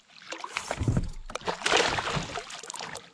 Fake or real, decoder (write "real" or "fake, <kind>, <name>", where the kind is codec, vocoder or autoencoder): real